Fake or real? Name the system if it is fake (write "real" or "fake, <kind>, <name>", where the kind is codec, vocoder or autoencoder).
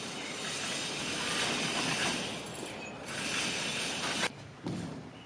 real